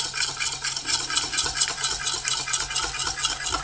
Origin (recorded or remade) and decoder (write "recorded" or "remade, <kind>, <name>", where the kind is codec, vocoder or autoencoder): recorded